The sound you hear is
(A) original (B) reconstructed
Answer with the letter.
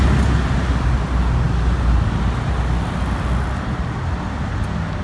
A